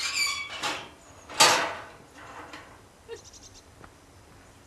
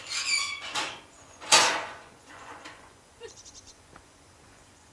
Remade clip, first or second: second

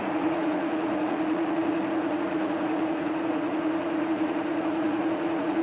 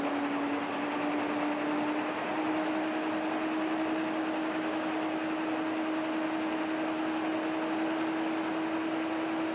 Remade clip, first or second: first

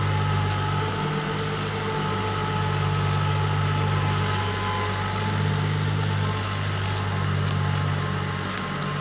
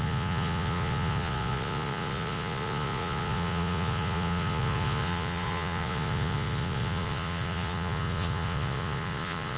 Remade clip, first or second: second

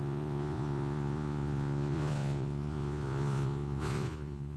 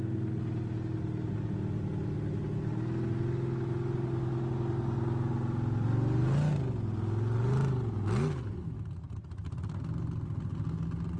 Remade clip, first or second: first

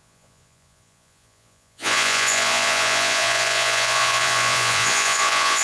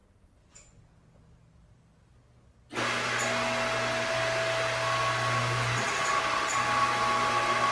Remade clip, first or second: first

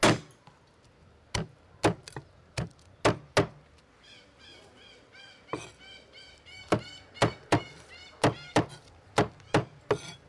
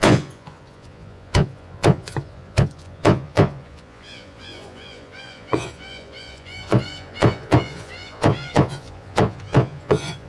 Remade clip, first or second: second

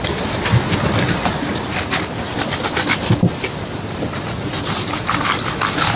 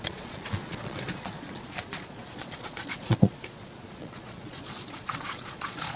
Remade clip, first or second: second